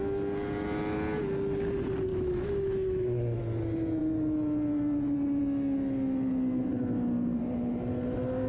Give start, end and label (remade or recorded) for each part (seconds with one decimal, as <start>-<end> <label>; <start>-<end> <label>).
0.0-2.1 recorded; 2.1-3.4 remade; 3.4-8.5 recorded